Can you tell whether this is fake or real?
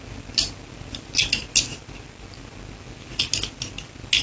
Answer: real